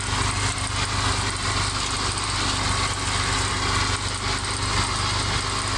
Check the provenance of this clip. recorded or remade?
recorded